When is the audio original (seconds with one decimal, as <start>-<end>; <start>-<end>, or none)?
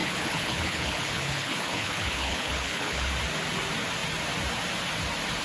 3.1-5.4